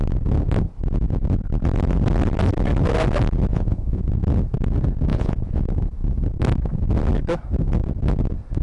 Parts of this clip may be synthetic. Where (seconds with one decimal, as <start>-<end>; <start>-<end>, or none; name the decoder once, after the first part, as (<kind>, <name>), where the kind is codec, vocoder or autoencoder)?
3.5-4.0 (vocoder, Vocos); 5.1-5.6